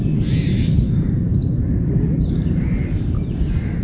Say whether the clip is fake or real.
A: fake